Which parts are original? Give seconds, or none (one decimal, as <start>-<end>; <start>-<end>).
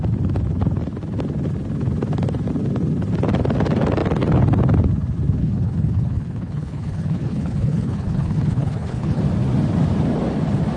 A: 0.0-5.4; 9.2-10.8